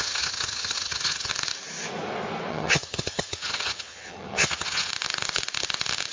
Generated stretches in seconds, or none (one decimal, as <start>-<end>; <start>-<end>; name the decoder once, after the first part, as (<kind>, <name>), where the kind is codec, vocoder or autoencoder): 0.0-1.3 (vocoder, HiFi-GAN); 2.5-4.9